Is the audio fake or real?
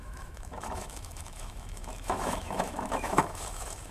fake